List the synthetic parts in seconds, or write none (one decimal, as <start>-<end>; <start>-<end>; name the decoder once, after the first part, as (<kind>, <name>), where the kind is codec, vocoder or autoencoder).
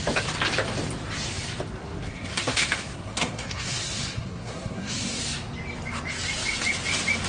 1.8-5.2 (codec, SNAC)